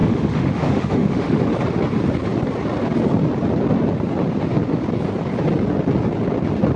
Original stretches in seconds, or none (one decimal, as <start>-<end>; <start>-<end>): 1.4-6.8